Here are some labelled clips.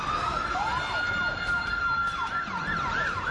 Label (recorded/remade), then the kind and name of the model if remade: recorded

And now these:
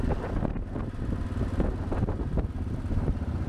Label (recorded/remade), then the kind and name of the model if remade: recorded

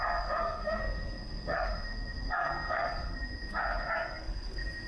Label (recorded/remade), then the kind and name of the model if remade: remade, codec, SNAC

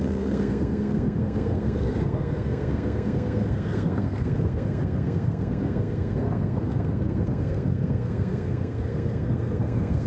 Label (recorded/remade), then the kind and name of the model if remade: remade, codec, SNAC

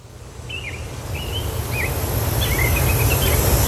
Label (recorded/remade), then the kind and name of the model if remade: recorded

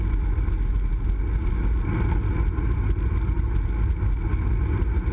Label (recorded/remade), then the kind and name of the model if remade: recorded